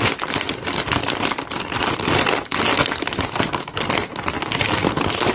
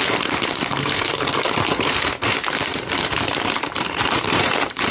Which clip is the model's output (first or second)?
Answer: second